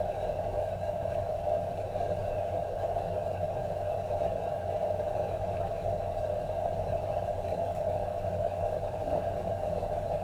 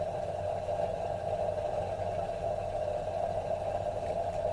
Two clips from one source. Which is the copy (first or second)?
first